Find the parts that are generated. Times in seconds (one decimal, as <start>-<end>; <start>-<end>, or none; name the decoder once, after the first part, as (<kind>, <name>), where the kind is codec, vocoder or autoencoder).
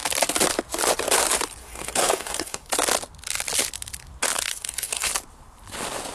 1.6-2.7 (codec, SNAC); 4.5-5.1